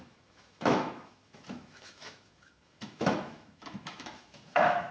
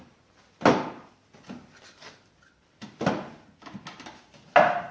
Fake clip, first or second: first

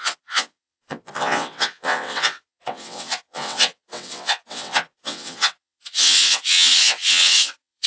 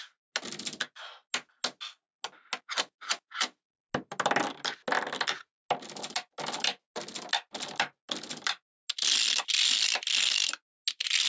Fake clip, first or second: first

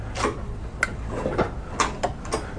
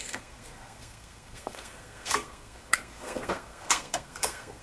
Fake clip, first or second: second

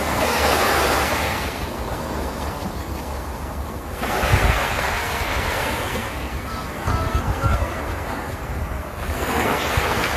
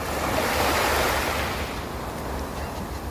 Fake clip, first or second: first